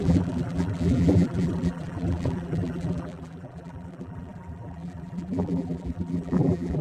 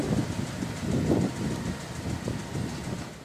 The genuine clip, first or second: second